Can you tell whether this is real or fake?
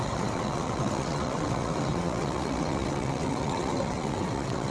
fake